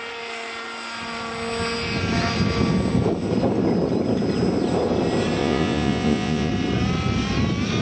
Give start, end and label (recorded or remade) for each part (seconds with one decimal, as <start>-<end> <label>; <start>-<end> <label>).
0.0-5.4 recorded; 5.4-6.5 remade; 6.5-7.8 recorded